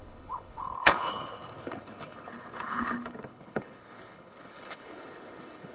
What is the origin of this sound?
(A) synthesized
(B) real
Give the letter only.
A